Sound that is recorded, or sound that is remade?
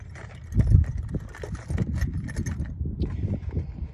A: recorded